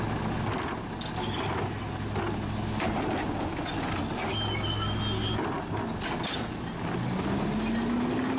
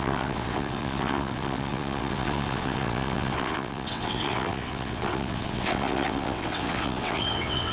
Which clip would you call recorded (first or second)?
first